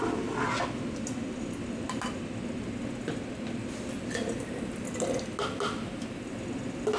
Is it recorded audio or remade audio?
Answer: recorded